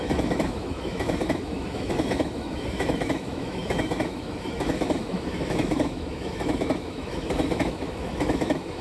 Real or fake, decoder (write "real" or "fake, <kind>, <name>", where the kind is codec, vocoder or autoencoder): fake, autoencoder, DAC-VAE